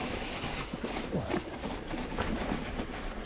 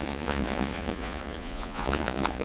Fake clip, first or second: second